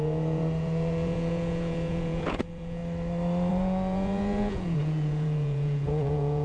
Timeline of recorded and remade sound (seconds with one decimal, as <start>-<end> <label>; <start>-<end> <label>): 0.0-2.8 remade; 2.8-3.5 recorded; 3.5-6.4 remade